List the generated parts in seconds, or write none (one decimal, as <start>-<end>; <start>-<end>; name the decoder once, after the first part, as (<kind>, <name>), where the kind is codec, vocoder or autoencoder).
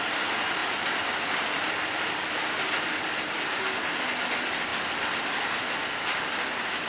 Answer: 0.6-3.4 (vocoder, BigVGAN v2); 4.7-5.3